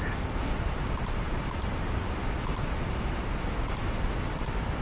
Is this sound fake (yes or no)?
no